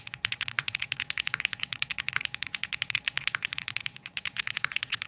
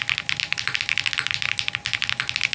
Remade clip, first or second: first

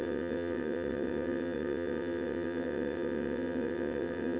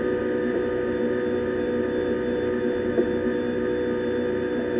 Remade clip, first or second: first